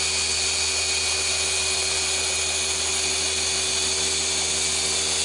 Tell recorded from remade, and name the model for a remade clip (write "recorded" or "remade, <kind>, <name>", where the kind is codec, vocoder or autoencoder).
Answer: recorded